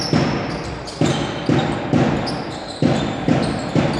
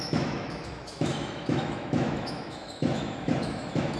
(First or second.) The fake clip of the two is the second